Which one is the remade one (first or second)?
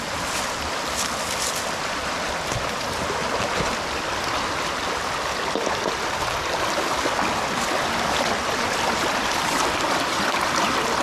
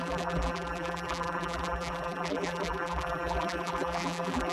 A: second